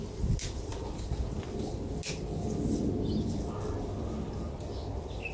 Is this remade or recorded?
recorded